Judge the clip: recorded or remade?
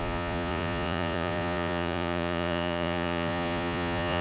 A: remade